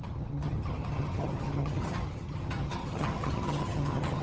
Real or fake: fake